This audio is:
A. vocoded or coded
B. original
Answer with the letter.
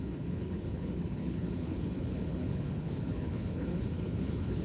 A